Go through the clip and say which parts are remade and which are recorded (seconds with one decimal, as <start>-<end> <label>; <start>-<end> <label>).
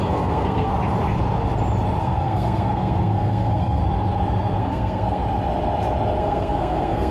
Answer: 0.0-0.7 remade; 0.7-2.0 recorded; 2.0-3.8 remade; 3.8-4.6 recorded; 4.6-5.2 remade; 5.2-6.2 recorded; 6.2-7.1 remade